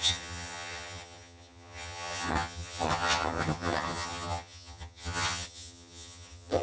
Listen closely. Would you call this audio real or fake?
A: fake